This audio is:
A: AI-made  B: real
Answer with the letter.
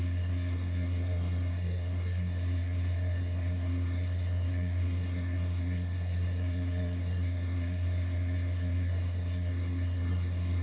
A